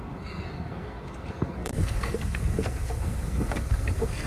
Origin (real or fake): fake